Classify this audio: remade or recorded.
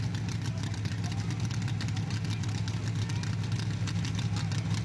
recorded